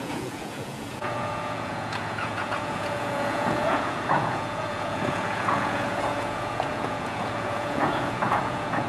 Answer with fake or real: fake